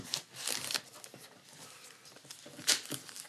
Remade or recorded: recorded